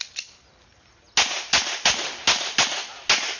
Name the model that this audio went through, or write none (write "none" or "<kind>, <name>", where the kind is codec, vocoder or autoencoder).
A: none